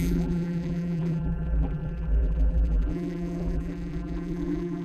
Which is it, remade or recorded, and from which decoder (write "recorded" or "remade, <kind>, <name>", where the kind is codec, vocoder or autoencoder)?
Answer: remade, vocoder, BigVGAN v2